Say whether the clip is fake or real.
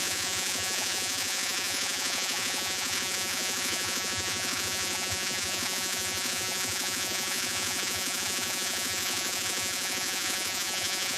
fake